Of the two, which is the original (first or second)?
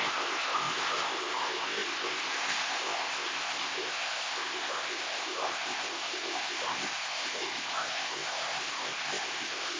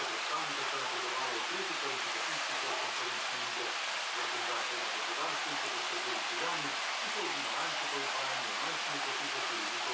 second